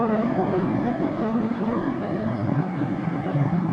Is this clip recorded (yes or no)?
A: no